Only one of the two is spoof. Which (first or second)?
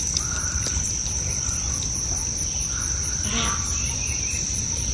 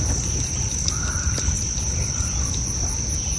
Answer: first